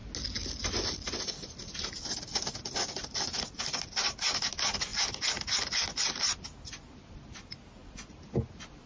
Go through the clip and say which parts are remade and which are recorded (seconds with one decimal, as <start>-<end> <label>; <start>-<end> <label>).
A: 0.0-8.9 recorded